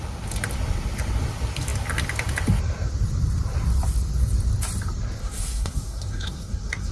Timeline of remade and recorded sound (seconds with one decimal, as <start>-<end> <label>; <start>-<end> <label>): 0.0-5.2 recorded; 5.2-6.9 remade